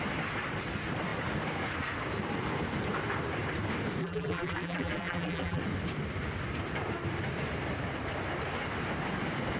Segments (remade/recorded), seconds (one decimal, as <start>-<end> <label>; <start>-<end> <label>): 0.0-4.0 recorded; 4.0-5.6 remade; 5.6-9.6 recorded